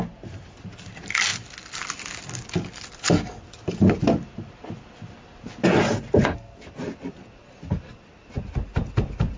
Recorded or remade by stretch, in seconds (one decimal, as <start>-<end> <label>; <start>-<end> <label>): 0.0-9.4 recorded